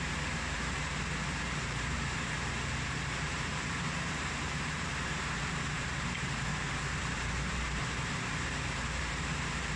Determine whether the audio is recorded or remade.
remade